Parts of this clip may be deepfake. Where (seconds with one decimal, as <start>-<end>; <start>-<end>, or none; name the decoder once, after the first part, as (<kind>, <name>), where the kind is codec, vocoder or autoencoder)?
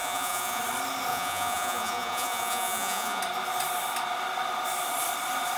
0.0-0.6 (vocoder, Vocos); 1.1-3.2